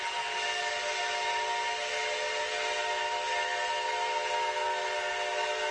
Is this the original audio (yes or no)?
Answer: yes